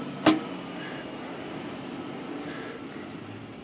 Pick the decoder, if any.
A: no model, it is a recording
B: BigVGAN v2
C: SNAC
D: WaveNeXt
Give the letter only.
A